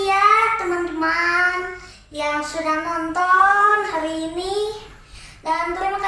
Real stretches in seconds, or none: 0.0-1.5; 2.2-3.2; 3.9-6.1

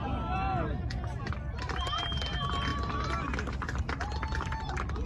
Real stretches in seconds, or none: 0.0-5.1

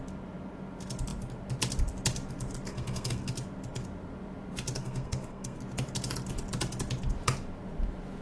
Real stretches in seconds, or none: 0.0-2.7; 3.3-4.8; 5.6-8.2

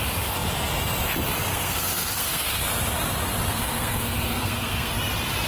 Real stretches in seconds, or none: 0.0-1.5; 2.6-3.5; 4.9-5.5